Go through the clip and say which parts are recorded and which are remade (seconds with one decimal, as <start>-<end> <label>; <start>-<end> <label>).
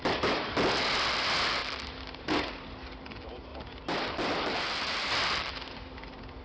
0.0-1.6 recorded; 1.6-2.3 remade; 2.3-3.5 recorded; 3.5-5.1 remade; 5.1-6.4 recorded